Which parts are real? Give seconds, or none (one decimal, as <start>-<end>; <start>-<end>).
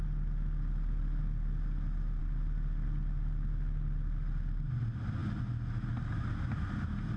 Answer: 0.0-7.2